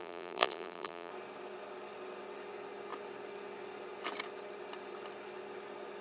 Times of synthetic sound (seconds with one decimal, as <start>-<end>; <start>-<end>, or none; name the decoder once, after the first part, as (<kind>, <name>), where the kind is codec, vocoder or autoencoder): 0.0-1.1 (vocoder, BigVGAN v2)